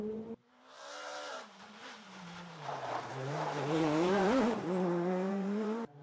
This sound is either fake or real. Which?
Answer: fake